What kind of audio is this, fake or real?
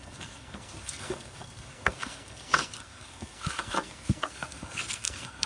fake